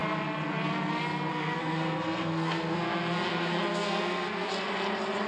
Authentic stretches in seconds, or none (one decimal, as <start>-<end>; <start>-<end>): 0.0-1.3; 4.5-5.3